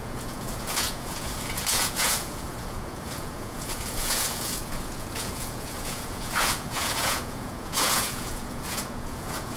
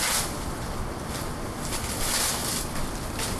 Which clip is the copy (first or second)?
first